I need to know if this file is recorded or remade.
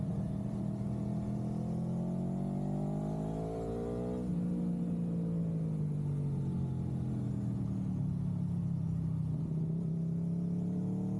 recorded